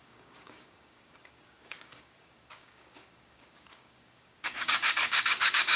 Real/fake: fake